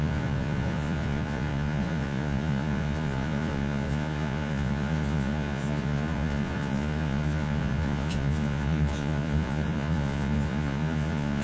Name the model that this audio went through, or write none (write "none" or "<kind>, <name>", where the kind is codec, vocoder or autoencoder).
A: vocoder, Vocos